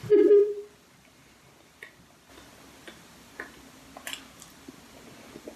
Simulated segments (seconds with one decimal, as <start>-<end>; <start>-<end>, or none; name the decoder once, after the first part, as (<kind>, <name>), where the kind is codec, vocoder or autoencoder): 0.4-2.3 (vocoder, BigVGAN v2)

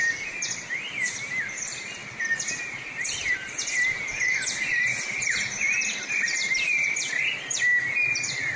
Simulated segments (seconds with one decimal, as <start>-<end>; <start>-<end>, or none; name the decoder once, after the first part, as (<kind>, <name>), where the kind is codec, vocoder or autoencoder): 0.0-2.0 (vocoder, BigVGAN v2); 2.5-8.6

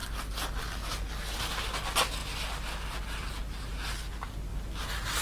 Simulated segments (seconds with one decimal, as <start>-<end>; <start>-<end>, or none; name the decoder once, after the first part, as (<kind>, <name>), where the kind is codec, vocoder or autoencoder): none

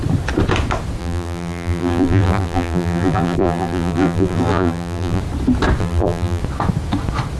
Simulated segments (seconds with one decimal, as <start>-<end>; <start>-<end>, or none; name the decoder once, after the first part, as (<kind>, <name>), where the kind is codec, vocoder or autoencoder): 1.0-5.2 (vocoder, BigVGAN v2); 5.8-6.4

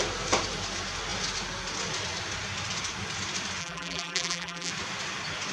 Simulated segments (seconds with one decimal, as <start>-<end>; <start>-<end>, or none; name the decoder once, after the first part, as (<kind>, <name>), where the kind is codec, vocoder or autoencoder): 3.6-4.7 (vocoder, BigVGAN v2)

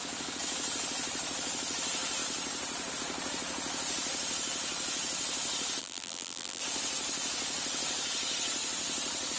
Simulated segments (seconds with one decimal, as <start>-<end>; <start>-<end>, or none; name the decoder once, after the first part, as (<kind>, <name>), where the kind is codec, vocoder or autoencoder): 5.8-6.6 (vocoder, BigVGAN v2)

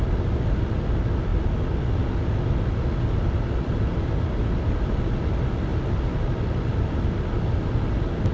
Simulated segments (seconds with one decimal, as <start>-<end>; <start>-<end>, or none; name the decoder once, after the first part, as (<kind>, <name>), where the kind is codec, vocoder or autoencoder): none

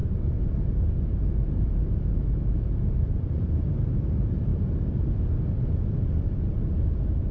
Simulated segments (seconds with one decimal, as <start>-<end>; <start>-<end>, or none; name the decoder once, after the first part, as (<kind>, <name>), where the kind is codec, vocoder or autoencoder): 0.0-4.5 (vocoder, BigVGAN v2); 6.1-7.3